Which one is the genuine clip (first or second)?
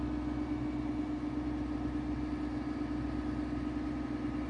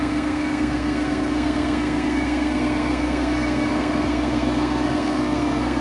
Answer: first